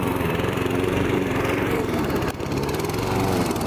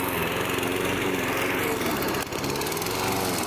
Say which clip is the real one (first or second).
second